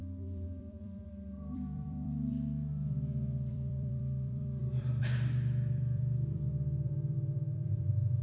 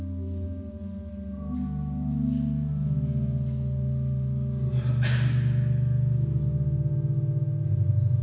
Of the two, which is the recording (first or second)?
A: second